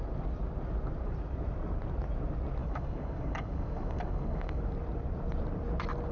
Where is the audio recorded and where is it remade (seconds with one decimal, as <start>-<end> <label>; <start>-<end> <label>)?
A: 0.0-2.6 recorded; 2.6-4.6 remade; 4.6-6.1 recorded